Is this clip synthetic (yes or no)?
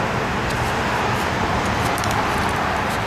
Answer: yes